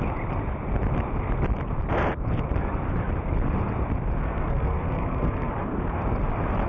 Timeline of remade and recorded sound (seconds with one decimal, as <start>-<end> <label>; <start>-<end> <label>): 0.0-4.2 recorded; 4.2-5.5 remade; 5.5-6.7 recorded